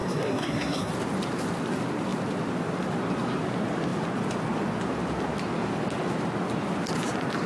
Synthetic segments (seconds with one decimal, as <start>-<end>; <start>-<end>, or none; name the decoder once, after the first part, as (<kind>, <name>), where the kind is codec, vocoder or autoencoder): 0.0-0.9 (codec, SNAC)